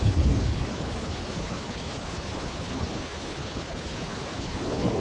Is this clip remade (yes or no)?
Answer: yes